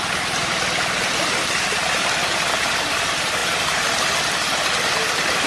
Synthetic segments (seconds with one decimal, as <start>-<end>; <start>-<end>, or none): none